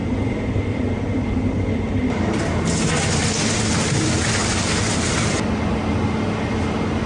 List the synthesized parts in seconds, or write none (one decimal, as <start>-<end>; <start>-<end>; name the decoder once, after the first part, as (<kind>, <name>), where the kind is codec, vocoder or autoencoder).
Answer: 0.0-2.2 (vocoder, BigVGAN v2); 4.4-5.6

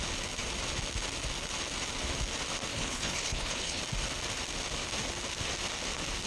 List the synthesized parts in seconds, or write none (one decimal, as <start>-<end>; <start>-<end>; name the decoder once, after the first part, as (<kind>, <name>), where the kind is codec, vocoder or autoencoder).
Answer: 2.7-3.8 (codec, HILCodec)

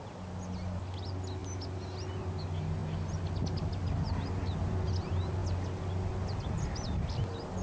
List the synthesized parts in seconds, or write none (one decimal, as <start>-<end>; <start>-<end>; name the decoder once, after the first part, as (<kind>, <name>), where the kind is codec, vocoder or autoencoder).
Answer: none

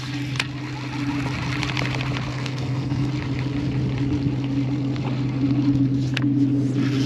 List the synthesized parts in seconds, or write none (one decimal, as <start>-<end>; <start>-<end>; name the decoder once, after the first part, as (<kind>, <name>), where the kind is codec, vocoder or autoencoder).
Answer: 2.3-3.1 (codec, SNAC)

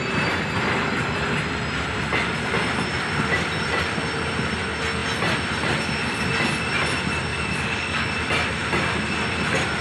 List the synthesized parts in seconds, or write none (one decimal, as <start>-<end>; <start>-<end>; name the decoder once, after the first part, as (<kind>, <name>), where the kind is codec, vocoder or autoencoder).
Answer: 7.3-8.1 (codec, DAC)